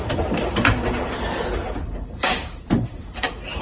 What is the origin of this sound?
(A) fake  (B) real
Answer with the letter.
A